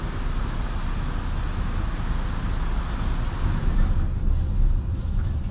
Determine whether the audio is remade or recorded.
recorded